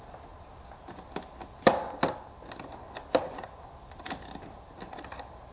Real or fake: real